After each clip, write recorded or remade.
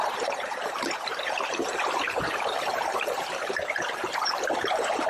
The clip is remade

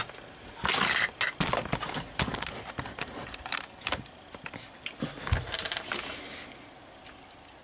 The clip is recorded